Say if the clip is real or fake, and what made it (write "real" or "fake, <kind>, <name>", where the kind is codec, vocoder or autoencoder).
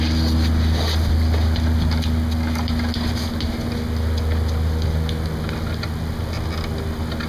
real